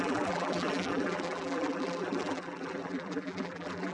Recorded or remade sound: remade